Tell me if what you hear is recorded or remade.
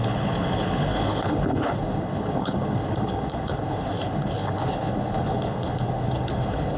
remade